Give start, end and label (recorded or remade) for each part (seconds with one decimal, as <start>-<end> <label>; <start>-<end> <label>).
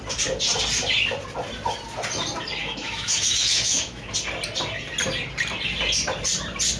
0.0-2.6 recorded; 2.6-4.1 remade; 4.1-6.8 recorded